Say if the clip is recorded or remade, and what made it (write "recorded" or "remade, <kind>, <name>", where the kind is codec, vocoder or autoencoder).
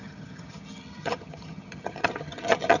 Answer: remade, vocoder, HiFi-GAN